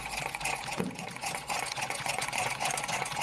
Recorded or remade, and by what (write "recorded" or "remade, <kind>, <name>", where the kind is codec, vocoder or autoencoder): remade, vocoder, Vocos